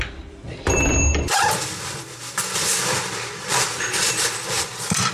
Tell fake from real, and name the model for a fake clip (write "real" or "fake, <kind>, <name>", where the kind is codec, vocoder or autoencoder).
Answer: fake, vocoder, BigVGAN v2